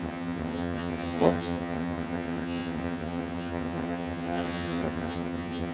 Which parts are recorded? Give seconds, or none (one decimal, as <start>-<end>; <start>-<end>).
none